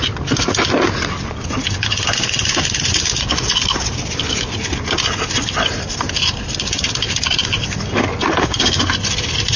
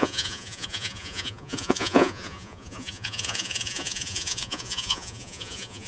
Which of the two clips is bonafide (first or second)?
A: first